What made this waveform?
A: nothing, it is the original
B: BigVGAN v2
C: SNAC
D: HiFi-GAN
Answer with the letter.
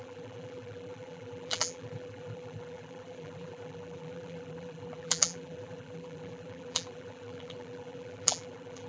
B